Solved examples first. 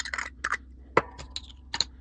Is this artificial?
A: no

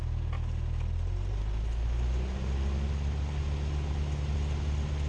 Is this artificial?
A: no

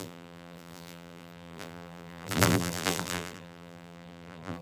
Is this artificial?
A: yes